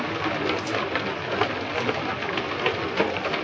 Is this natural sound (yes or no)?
yes